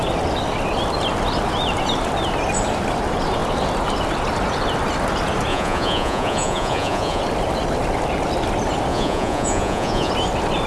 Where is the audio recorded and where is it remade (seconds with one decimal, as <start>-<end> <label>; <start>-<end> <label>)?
0.0-5.5 recorded; 5.5-7.2 remade; 7.2-8.9 recorded; 8.9-10.1 remade; 10.1-10.7 recorded